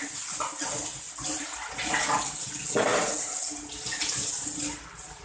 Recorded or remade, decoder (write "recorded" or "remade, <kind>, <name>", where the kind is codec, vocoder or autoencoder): recorded